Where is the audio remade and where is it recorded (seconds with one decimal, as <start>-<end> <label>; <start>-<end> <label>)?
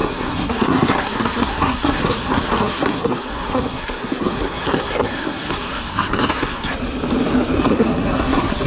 0.0-6.7 remade; 6.7-7.6 recorded; 7.6-8.7 remade